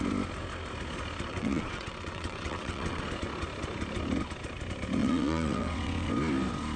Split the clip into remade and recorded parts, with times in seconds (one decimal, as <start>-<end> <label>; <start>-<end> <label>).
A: 0.0-1.3 recorded; 1.3-3.0 remade; 3.0-5.0 recorded; 5.0-6.1 remade; 6.1-6.8 recorded